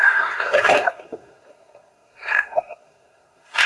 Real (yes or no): no